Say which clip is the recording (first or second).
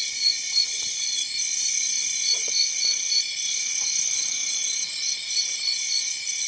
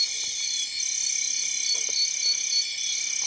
second